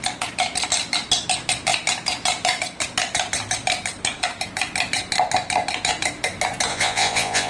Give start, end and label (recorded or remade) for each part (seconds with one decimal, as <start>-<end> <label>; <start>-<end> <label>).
0.0-6.7 recorded; 6.7-7.5 remade